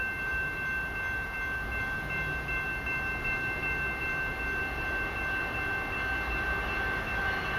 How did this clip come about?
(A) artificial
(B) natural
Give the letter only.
B